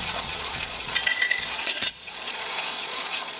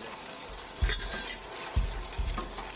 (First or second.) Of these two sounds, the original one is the second